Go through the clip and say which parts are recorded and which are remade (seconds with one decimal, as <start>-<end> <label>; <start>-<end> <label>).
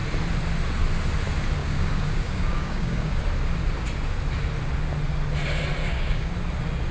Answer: 0.0-1.6 recorded; 1.6-3.2 remade; 3.2-5.8 recorded; 5.8-6.3 remade; 6.3-6.9 recorded